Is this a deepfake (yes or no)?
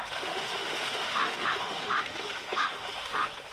yes